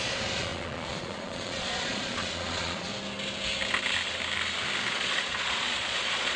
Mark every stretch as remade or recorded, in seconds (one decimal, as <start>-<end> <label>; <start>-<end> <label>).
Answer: 0.0-2.9 remade; 2.9-4.9 recorded; 4.9-6.4 remade